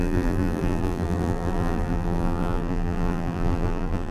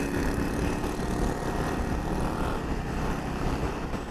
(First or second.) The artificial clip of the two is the first